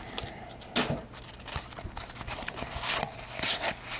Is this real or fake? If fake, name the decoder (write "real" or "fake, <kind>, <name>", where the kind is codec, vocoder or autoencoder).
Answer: real